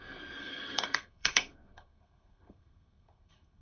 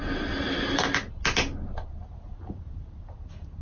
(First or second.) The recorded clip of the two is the second